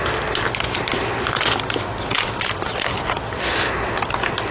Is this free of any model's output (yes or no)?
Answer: yes